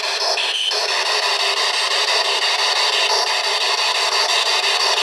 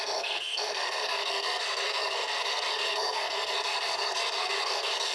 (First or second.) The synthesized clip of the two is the second